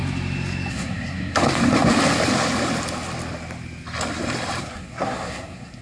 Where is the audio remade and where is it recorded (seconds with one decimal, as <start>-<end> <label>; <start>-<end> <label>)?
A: 0.0-0.7 recorded; 0.7-1.4 remade; 1.4-4.6 recorded; 4.6-5.8 remade